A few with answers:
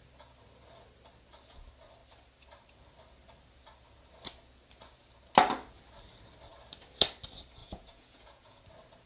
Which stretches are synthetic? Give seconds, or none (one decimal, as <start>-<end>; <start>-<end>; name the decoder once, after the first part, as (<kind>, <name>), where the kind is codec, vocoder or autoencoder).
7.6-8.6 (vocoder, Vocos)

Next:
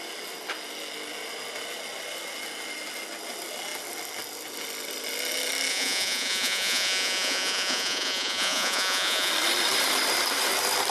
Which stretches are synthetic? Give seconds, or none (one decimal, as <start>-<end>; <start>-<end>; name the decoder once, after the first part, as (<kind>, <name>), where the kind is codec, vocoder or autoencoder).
5.7-9.3 (vocoder, Vocos)

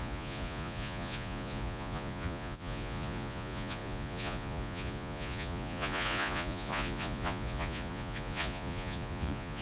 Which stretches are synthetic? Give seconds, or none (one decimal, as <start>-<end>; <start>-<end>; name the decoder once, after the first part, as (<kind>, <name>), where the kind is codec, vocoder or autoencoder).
0.0-9.6 (vocoder, Vocos)